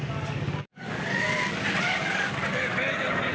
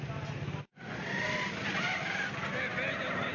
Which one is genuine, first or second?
second